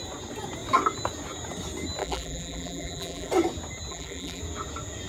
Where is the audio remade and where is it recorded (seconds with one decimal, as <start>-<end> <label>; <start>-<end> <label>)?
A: 0.0-2.0 recorded; 2.0-3.3 remade; 3.3-3.9 recorded; 3.9-4.4 remade; 4.4-5.1 recorded